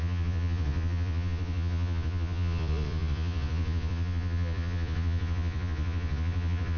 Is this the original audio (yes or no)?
no